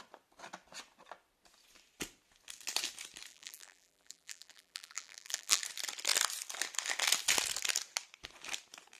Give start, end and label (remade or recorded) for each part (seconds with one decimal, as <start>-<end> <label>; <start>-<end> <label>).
0.0-3.3 recorded; 3.3-5.6 remade; 5.6-9.0 recorded